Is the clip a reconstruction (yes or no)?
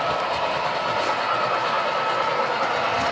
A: no